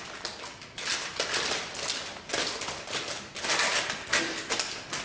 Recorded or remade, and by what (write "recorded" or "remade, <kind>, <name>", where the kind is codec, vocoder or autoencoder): recorded